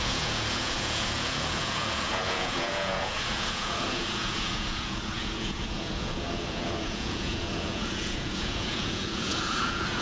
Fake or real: fake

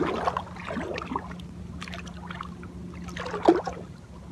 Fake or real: real